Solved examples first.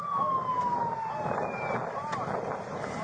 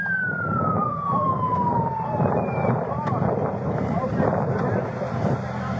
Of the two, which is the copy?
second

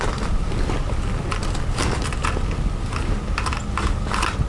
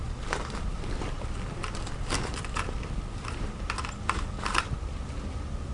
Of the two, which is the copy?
second